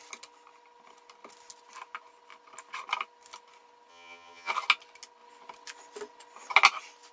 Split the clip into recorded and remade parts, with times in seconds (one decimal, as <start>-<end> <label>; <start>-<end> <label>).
0.0-3.9 recorded; 3.9-4.5 remade; 4.5-7.1 recorded

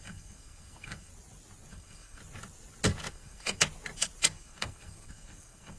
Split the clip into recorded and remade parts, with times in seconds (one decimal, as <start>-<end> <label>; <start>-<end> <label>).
0.0-1.1 remade; 1.1-1.7 recorded; 1.7-2.2 remade; 2.2-3.1 recorded; 3.1-3.6 remade; 3.6-4.2 recorded; 4.2-5.8 remade

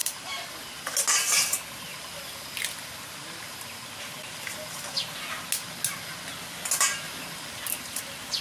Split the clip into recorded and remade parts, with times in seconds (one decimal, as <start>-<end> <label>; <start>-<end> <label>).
0.0-0.5 remade; 0.5-8.4 recorded

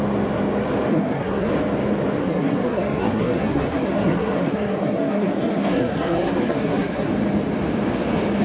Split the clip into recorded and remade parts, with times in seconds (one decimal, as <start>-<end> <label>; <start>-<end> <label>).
0.0-0.9 recorded; 0.9-1.5 remade; 1.5-2.2 recorded; 2.2-7.1 remade; 7.1-8.4 recorded

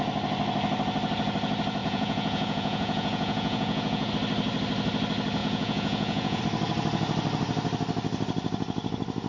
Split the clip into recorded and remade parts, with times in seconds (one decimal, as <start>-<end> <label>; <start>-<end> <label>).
0.0-1.8 recorded; 1.8-4.1 remade; 4.1-5.4 recorded; 5.4-6.4 remade; 6.4-9.3 recorded